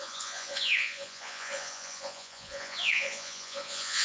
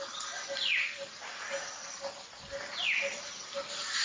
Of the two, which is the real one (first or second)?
second